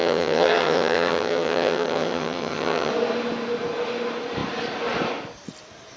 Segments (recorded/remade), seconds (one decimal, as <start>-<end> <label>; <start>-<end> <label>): 0.0-2.9 remade; 2.9-6.0 recorded